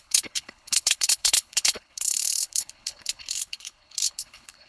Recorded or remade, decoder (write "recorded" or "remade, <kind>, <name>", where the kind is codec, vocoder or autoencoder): remade, codec, HILCodec